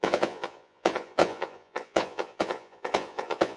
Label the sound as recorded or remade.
remade